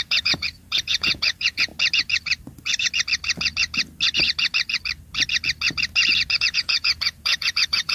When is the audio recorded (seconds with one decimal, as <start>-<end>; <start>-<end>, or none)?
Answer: 1.7-6.4